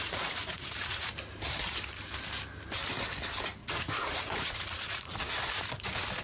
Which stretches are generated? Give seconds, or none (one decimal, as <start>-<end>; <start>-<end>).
0.0-1.1; 3.6-5.7